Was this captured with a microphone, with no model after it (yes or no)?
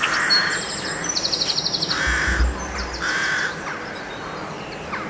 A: yes